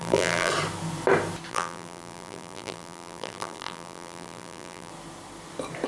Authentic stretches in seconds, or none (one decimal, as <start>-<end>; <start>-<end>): 0.5-1.5; 4.9-5.9